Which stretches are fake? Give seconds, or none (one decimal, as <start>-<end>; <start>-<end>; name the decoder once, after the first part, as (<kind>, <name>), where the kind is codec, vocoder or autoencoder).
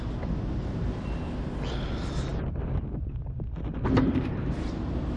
none